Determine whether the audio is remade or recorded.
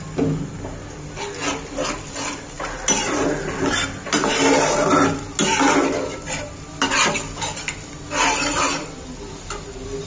recorded